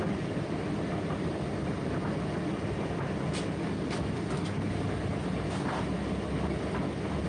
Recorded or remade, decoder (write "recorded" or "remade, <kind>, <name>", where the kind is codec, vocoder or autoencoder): recorded